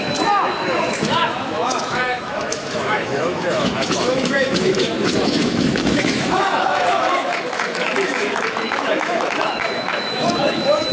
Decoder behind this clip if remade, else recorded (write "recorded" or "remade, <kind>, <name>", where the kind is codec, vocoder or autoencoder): remade, autoencoder, DAC-VAE